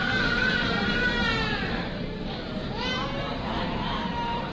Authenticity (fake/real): fake